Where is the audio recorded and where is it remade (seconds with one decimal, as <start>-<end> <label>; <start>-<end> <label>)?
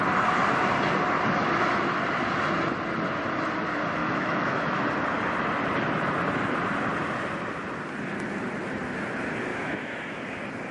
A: 0.0-4.0 recorded; 4.0-4.8 remade; 4.8-9.5 recorded; 9.5-10.2 remade; 10.2-10.7 recorded